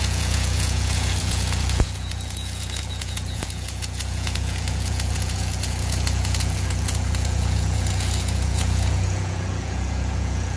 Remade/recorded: remade